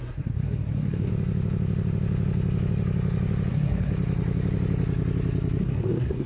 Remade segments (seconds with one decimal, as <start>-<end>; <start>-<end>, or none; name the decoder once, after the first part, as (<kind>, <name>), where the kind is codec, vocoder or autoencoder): 0.0-1.1 (codec, SNAC); 3.5-3.9; 5.6-6.3